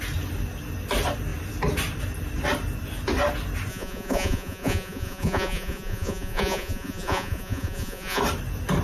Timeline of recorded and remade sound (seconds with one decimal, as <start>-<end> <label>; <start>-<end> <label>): 0.0-3.7 recorded; 3.7-8.2 remade; 8.2-8.8 recorded